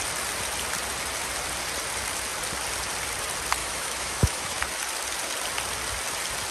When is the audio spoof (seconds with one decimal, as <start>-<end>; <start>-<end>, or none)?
3.6-4.6